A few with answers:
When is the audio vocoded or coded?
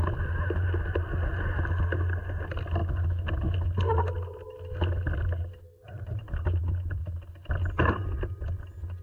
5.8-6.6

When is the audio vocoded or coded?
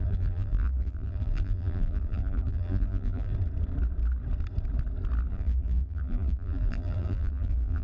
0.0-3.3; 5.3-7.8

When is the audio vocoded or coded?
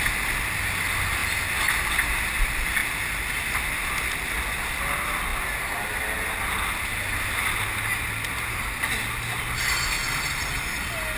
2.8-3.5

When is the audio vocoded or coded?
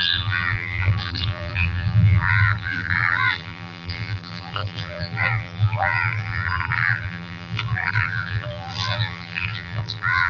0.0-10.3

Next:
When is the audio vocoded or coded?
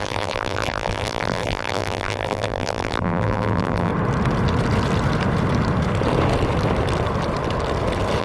0.0-3.9